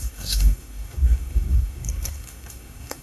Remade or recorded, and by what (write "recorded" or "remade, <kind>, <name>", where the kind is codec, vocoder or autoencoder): remade, codec, SNAC